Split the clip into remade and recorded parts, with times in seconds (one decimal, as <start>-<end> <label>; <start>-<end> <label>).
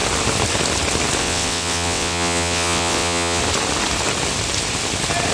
0.0-1.2 recorded; 1.2-3.4 remade; 3.4-5.3 recorded